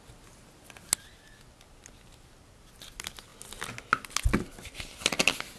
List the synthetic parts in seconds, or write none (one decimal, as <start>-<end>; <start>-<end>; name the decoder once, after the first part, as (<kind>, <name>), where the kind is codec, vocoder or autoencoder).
none